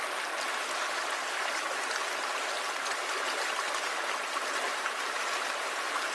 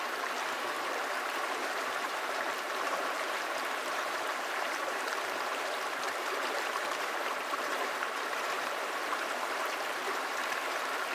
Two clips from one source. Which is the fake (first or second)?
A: second